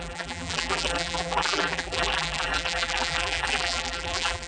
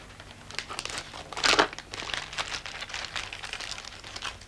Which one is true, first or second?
second